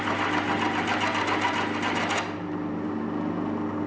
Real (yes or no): yes